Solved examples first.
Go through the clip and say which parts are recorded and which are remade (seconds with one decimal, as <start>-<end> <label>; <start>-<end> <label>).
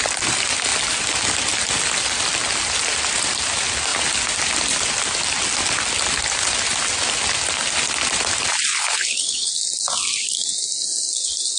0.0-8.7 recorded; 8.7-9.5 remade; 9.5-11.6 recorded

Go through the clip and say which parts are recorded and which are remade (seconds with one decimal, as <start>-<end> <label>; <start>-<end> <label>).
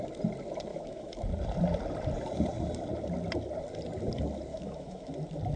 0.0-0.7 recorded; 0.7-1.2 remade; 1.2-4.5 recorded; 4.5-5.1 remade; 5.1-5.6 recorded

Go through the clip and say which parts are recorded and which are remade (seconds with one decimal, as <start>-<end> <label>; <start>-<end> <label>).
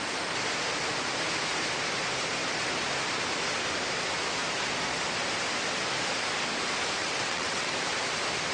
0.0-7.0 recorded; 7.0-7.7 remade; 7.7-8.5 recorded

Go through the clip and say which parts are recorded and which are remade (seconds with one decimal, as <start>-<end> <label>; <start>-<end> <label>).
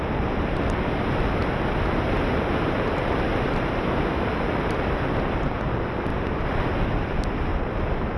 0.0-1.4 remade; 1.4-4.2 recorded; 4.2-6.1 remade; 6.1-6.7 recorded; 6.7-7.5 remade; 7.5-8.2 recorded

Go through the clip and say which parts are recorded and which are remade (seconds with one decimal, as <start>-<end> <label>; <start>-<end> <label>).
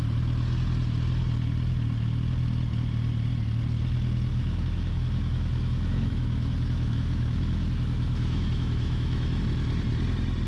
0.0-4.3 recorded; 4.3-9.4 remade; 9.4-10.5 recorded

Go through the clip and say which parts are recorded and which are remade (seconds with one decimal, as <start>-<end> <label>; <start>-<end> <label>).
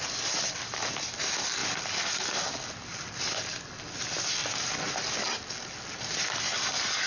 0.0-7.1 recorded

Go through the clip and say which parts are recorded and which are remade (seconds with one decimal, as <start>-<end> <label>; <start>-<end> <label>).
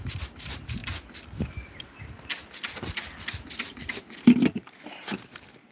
0.0-0.8 remade; 0.8-4.2 recorded; 4.2-5.7 remade